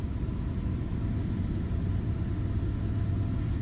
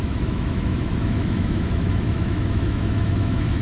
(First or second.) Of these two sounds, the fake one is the second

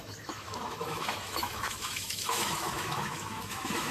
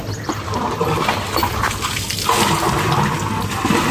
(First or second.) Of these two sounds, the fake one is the first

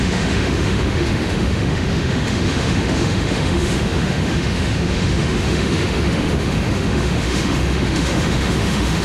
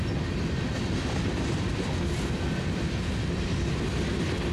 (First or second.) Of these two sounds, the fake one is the first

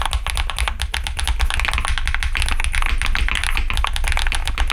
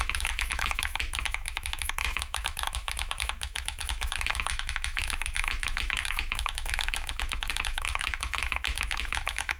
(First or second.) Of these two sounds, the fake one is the second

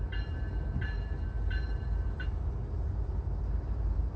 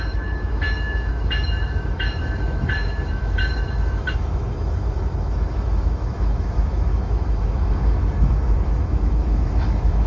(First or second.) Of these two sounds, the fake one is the second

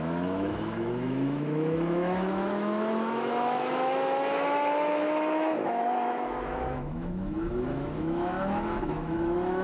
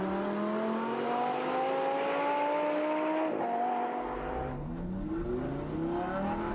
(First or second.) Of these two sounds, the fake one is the first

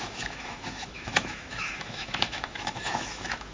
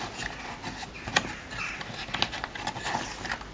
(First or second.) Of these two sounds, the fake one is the first